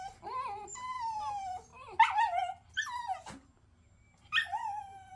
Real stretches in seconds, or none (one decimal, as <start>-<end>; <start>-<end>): 0.0-5.2